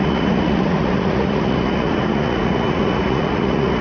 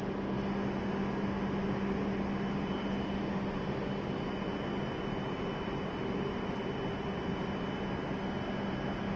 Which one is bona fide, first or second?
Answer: second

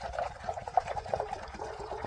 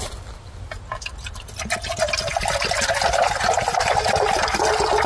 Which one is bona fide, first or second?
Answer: second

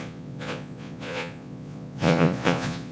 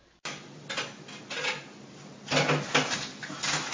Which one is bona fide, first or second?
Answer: second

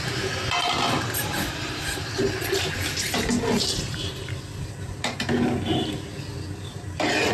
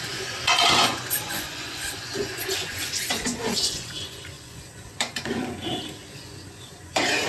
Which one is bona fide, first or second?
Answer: first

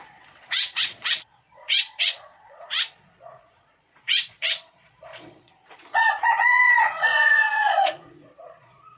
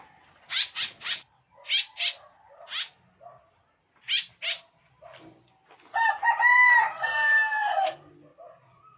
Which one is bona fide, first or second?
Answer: second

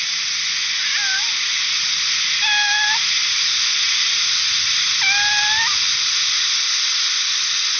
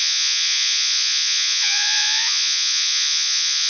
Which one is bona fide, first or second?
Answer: first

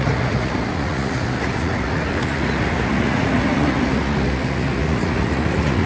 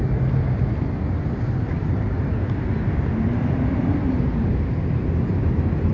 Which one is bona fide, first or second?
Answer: second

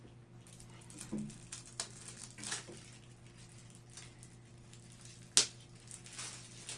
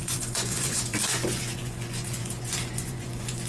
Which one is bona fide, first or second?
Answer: first